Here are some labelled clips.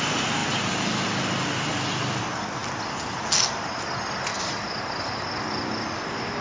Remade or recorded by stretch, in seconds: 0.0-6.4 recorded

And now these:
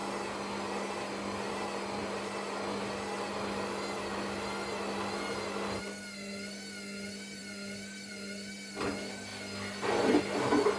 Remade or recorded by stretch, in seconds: 0.0-10.8 recorded

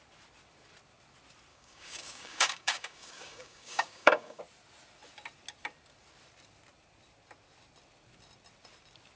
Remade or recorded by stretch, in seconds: 0.0-1.5 recorded; 1.5-4.4 remade; 4.4-9.2 recorded

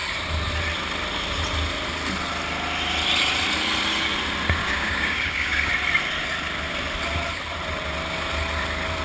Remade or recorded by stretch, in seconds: 0.0-4.6 recorded; 4.6-5.7 remade; 5.7-9.0 recorded

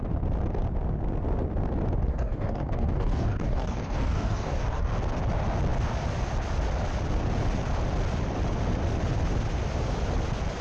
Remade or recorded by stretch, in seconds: 0.0-2.1 recorded; 2.1-4.9 remade; 4.9-10.6 recorded

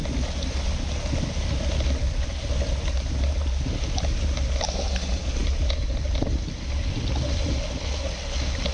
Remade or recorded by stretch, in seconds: 0.0-8.7 recorded

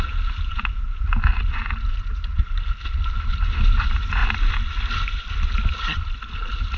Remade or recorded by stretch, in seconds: 0.0-6.8 recorded